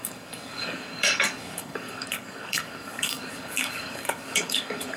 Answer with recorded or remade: remade